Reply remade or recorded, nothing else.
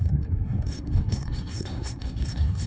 remade